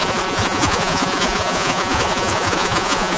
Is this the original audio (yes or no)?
no